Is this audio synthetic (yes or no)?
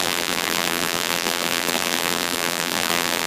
yes